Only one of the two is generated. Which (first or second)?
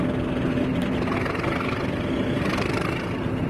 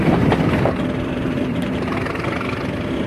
second